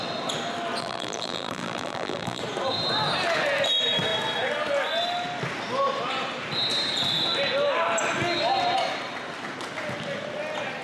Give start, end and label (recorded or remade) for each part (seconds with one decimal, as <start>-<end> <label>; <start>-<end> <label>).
0.0-0.8 recorded; 0.8-2.4 remade; 2.4-10.8 recorded